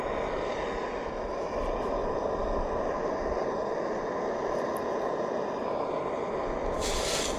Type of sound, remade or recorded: recorded